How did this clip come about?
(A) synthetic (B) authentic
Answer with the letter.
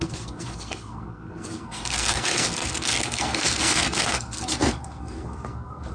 A